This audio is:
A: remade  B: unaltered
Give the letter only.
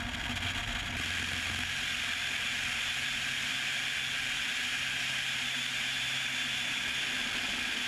B